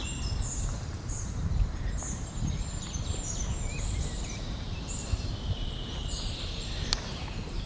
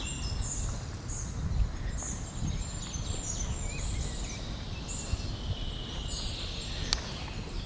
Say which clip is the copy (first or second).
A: first